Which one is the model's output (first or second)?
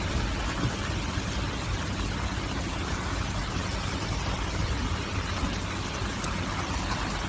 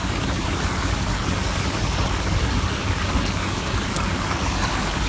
second